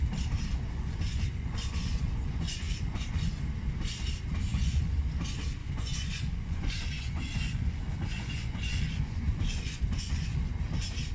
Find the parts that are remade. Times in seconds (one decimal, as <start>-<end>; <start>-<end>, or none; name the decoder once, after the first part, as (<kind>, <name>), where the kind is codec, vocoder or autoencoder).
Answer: 0.5-3.3 (vocoder, Vocos); 4.5-5.0; 5.6-10.5